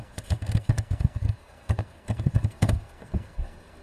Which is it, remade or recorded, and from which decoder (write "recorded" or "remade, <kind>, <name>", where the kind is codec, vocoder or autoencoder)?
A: remade, codec, SNAC